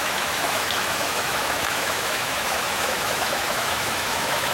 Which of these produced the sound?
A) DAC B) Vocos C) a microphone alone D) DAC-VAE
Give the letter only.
D